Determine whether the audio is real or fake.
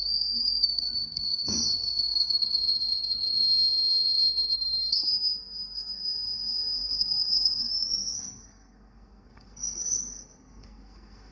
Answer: fake